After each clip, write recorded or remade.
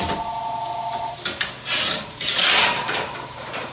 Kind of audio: recorded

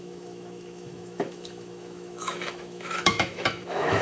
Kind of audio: remade